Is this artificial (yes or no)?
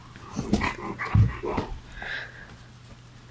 no